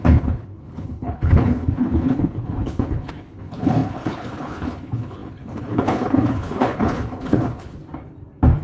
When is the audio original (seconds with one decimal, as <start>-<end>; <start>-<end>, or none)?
7.8-8.6